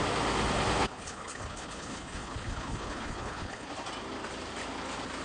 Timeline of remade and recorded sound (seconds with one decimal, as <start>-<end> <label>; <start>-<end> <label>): 0.0-0.8 recorded; 0.8-3.7 remade; 3.7-5.2 recorded